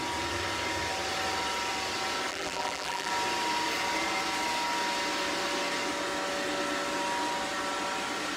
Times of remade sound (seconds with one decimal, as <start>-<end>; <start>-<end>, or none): 2.3-3.1